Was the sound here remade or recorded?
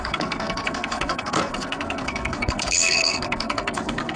remade